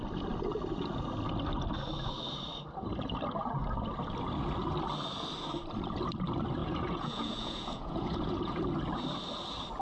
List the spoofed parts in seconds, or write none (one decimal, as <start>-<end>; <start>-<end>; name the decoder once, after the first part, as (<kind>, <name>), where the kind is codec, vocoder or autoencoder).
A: 6.6-8.6 (vocoder, Vocos)